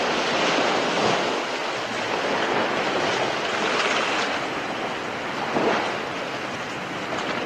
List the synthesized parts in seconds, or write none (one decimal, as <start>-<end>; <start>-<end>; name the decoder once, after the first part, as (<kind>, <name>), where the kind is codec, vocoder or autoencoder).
none